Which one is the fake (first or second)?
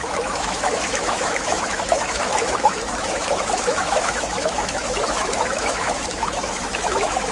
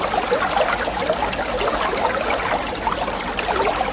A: first